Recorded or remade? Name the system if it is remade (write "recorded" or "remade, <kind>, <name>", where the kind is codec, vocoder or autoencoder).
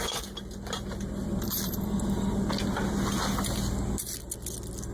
recorded